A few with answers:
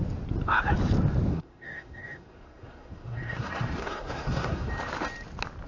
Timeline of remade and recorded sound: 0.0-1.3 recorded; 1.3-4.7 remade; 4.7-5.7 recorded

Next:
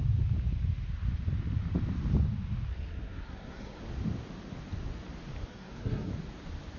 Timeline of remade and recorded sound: 0.0-2.7 recorded; 2.7-3.8 remade; 3.8-5.5 recorded; 5.5-6.1 remade; 6.1-6.8 recorded

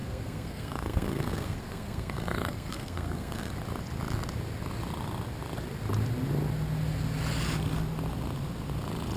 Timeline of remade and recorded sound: 0.0-3.5 remade; 3.5-9.2 recorded

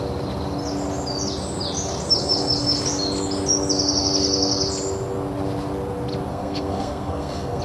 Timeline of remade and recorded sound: 0.0-6.3 recorded; 6.3-7.6 remade

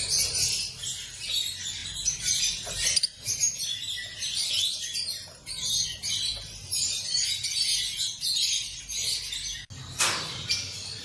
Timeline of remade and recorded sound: 0.0-11.0 recorded

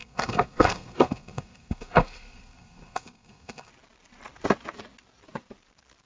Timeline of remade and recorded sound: 0.0-3.7 remade; 3.7-6.1 recorded